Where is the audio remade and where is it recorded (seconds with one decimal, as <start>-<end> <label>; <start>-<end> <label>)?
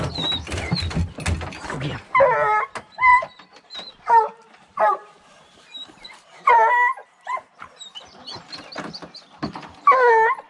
0.0-3.1 recorded; 3.1-6.5 remade; 6.5-7.0 recorded; 7.0-9.7 remade; 9.7-10.5 recorded